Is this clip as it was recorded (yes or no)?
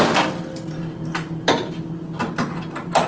yes